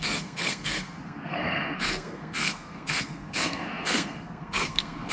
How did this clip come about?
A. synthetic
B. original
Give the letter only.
A